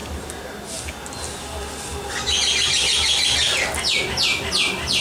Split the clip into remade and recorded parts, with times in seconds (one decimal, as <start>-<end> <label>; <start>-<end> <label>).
0.0-5.0 recorded